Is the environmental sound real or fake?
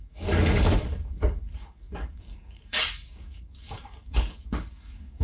fake